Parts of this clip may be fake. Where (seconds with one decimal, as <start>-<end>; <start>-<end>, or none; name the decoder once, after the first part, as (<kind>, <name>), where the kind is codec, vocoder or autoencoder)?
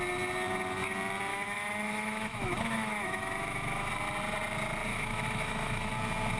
1.3-3.9 (autoencoder, DAC-VAE); 4.9-5.9